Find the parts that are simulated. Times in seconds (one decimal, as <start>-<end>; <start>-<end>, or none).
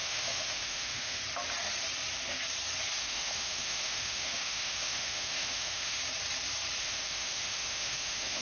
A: 0.0-1.2; 3.0-6.0; 6.8-8.4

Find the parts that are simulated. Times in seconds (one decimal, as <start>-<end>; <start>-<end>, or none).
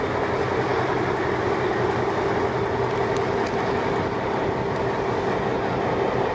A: none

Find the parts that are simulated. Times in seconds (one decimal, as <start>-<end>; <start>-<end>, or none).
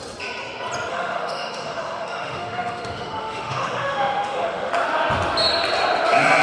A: 0.9-4.7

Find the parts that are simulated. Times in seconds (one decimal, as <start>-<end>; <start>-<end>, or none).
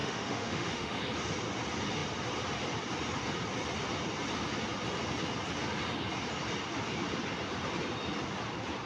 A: 0.0-1.0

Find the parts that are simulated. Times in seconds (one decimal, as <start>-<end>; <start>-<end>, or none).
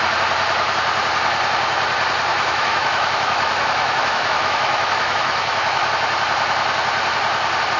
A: 2.3-5.9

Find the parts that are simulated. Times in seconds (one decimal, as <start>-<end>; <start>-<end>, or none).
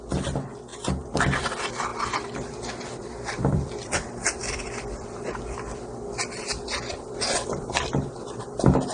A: 0.0-8.9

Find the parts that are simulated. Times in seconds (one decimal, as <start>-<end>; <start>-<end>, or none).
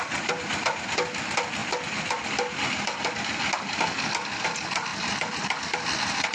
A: none